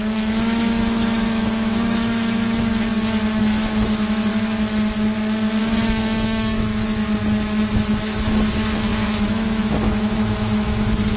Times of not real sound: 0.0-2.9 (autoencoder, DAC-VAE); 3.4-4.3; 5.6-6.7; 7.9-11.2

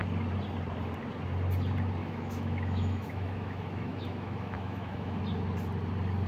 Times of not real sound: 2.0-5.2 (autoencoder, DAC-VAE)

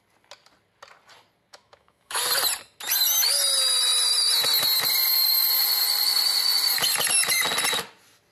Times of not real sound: 1.5-2.2 (autoencoder, DAC-VAE)

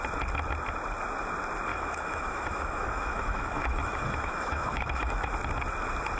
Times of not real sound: 1.7-5.3 (autoencoder, DAC-VAE)